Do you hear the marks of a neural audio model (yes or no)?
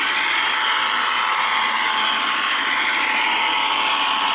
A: no